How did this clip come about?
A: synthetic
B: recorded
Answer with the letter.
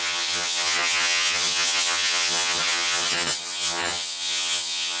A